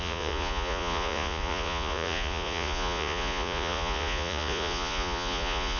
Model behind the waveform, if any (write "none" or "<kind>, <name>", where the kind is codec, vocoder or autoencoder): vocoder, Vocos